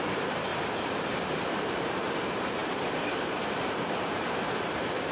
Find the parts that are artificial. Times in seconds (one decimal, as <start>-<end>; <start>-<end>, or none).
0.0-0.5; 1.5-5.1